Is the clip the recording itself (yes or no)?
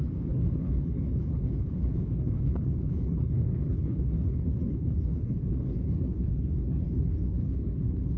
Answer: no